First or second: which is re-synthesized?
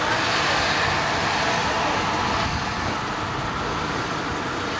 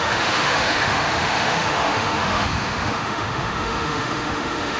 second